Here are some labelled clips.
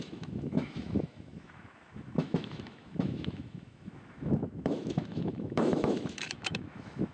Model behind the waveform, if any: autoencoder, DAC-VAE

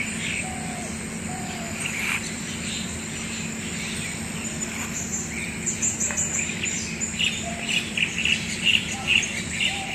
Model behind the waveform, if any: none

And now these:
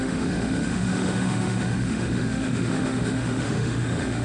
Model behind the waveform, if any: autoencoder, DAC-VAE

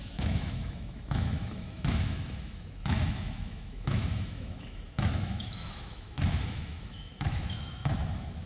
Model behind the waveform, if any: autoencoder, DAC-VAE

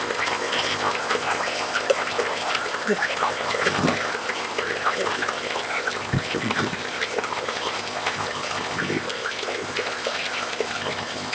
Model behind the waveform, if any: codec, ZipCodec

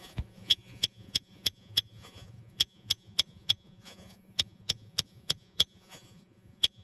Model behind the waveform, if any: vocoder, Vocos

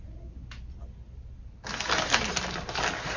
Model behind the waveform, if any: none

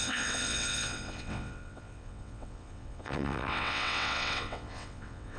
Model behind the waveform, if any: vocoder, WaveNeXt